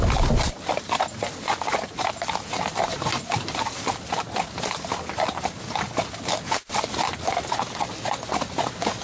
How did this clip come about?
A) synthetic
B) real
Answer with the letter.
B